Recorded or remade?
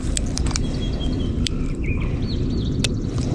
remade